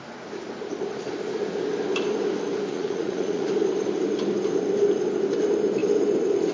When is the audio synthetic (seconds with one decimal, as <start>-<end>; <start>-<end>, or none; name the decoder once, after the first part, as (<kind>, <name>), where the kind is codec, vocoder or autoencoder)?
2.7-3.5 (vocoder, Vocos)